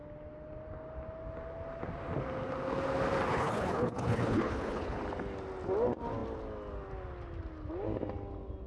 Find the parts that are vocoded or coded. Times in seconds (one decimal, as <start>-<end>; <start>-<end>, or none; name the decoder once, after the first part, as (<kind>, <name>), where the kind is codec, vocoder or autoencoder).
3.3-5.0 (codec, HILCodec)